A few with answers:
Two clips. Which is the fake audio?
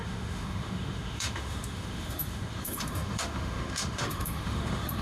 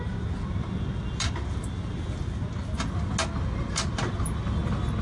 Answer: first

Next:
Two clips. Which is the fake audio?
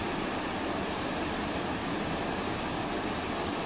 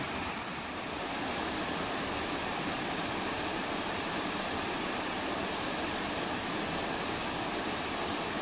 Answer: second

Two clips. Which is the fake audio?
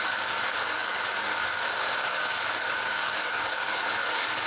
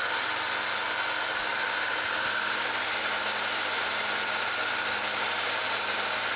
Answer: first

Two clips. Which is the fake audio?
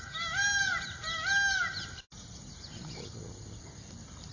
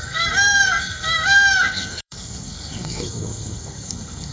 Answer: second